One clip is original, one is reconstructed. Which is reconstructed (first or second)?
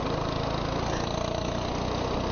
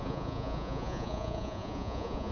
second